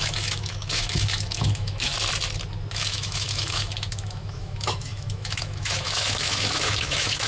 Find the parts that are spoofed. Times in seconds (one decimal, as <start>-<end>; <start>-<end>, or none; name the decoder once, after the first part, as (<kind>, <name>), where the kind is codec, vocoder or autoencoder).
0.0-1.9 (autoencoder, DAC-VAE); 2.7-7.3